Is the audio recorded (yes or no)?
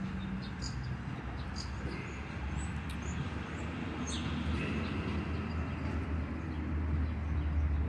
yes